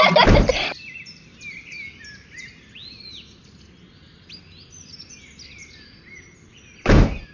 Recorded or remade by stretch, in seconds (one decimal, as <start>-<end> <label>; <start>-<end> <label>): 0.0-7.3 recorded